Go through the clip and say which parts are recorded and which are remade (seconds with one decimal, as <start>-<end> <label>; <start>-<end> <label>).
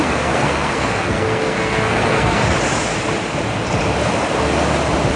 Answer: 0.0-2.4 remade; 2.4-5.2 recorded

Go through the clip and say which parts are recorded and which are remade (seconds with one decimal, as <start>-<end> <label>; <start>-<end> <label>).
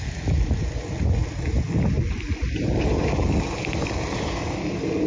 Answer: 0.0-5.1 recorded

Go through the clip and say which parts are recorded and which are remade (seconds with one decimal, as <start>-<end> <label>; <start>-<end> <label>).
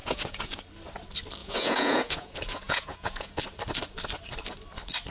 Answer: 0.0-0.6 remade; 0.6-1.4 recorded; 1.4-3.4 remade; 3.4-5.1 recorded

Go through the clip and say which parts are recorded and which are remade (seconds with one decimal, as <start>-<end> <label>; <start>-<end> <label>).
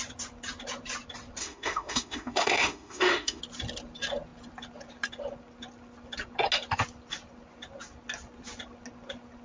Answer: 0.0-1.4 recorded; 1.4-3.4 remade; 3.4-9.4 recorded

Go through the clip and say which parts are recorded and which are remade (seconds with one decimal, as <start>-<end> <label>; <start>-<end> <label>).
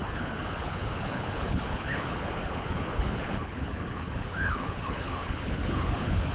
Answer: 0.0-6.3 remade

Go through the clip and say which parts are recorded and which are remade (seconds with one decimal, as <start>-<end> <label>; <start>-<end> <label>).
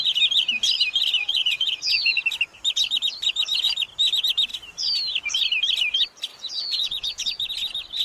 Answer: 0.0-1.2 recorded; 1.2-2.2 remade; 2.2-6.3 recorded; 6.3-7.5 remade; 7.5-8.0 recorded